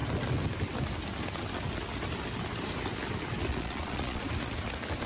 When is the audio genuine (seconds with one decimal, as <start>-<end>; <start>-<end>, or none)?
0.0-3.5; 4.2-5.1